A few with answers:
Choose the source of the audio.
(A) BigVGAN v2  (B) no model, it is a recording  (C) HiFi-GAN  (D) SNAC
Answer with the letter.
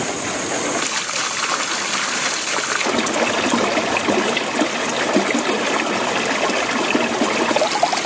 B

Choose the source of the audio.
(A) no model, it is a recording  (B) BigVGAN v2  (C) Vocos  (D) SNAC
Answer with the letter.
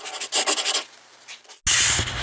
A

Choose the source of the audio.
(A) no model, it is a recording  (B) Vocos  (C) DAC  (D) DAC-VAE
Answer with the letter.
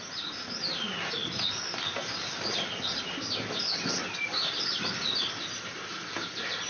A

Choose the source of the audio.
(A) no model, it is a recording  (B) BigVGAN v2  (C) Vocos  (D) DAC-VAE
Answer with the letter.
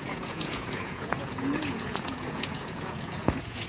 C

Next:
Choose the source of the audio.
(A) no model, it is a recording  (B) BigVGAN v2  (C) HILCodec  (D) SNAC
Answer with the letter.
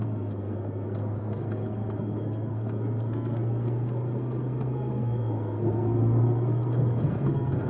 D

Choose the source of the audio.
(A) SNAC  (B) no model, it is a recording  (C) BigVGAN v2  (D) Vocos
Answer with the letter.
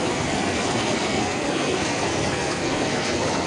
A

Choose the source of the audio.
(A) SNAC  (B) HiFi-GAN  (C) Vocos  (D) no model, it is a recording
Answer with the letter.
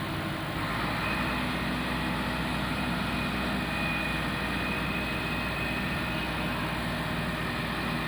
D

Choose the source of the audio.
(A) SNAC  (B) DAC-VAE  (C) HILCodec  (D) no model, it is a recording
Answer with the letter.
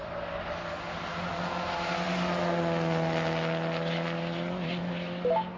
D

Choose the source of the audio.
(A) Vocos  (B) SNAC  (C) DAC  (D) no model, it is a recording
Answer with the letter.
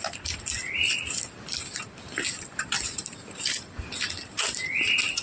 D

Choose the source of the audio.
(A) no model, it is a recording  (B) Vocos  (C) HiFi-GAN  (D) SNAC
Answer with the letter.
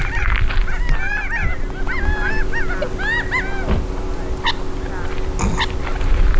A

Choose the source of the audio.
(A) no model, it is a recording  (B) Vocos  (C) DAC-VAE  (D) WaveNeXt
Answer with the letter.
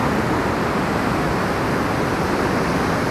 A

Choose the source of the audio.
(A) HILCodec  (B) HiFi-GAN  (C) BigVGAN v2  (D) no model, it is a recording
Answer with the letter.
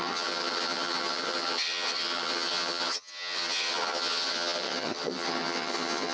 B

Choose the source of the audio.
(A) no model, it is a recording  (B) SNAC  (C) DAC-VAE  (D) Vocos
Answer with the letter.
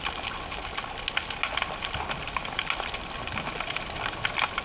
A